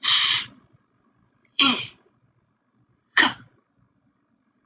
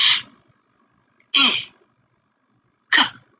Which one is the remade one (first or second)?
first